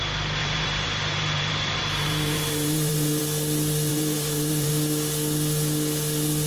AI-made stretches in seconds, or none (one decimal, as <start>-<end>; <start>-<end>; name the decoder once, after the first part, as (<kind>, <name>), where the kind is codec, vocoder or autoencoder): 0.4-3.2 (vocoder, BigVGAN v2); 3.9-4.7